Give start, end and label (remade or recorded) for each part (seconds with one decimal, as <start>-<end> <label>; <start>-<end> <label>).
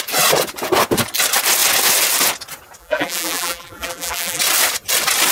0.0-2.8 recorded; 2.8-4.4 remade; 4.4-5.3 recorded